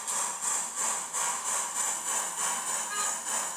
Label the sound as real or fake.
real